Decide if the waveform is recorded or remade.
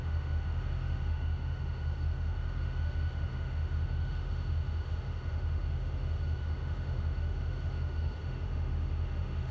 remade